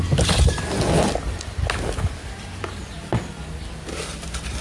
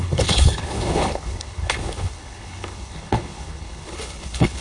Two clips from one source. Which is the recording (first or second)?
first